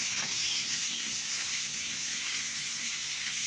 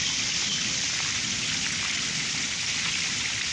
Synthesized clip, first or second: first